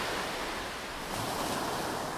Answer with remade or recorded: recorded